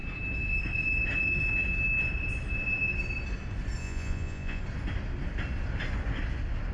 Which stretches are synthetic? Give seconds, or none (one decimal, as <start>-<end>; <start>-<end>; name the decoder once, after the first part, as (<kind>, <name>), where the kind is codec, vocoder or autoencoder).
3.8-4.6 (vocoder, Vocos)